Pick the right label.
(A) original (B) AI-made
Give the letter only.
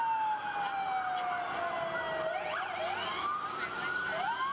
A